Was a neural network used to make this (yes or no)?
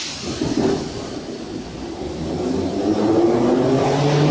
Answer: no